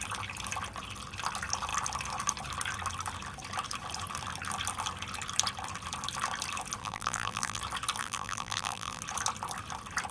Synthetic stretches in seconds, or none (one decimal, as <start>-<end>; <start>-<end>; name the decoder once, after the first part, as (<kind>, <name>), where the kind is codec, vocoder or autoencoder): 6.8-7.6 (vocoder, BigVGAN v2); 8.0-9.0